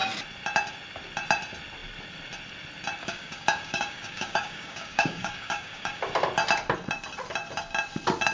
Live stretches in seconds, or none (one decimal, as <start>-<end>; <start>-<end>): 0.0-3.0; 6.0-8.3